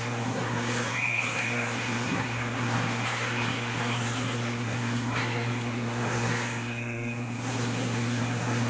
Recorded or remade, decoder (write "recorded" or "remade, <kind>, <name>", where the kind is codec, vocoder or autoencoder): remade, codec, SNAC